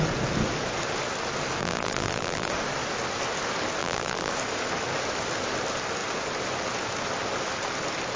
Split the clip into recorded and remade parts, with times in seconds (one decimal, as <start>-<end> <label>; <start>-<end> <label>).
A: 0.0-1.6 recorded; 1.6-2.5 remade; 2.5-3.8 recorded; 3.8-4.3 remade; 4.3-8.2 recorded